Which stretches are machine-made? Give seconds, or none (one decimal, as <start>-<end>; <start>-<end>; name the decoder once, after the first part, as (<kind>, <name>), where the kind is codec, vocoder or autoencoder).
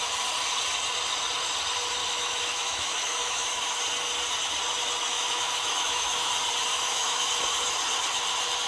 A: 2.0-3.8 (autoencoder, DAC-VAE); 5.1-6.3; 6.7-7.3